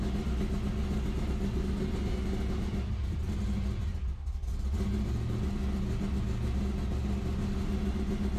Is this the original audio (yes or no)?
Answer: yes